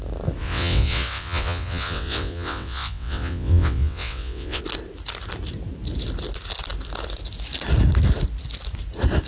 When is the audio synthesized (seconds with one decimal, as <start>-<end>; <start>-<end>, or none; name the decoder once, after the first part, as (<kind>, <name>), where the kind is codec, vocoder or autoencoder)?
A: 0.4-4.6 (vocoder, WaveNeXt)